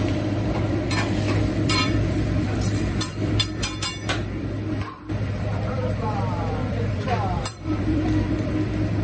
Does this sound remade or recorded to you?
remade